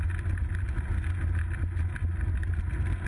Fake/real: real